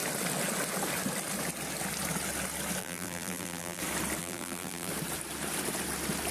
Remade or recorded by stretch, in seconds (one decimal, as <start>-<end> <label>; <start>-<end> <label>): 0.0-2.8 recorded; 2.8-3.8 remade; 3.8-4.2 recorded; 4.2-4.9 remade; 4.9-6.3 recorded